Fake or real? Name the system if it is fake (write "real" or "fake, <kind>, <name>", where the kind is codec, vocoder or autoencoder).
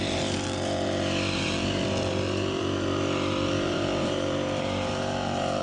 fake, vocoder, BigVGAN v2